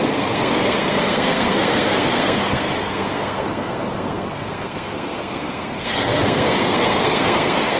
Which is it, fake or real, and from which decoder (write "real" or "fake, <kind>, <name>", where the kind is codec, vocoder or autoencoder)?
fake, codec, SNAC